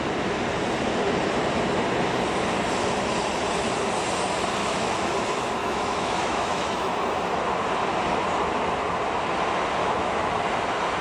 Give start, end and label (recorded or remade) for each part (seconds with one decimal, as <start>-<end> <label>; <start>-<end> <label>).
0.0-4.6 recorded; 4.6-5.1 remade; 5.1-5.6 recorded; 5.6-6.9 remade; 6.9-9.8 recorded; 9.8-10.3 remade; 10.3-11.0 recorded